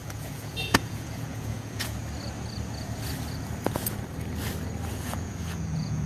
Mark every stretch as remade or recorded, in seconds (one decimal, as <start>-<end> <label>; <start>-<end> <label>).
0.0-2.0 remade; 2.0-4.9 recorded; 4.9-6.1 remade